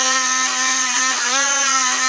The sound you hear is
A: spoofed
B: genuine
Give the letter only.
A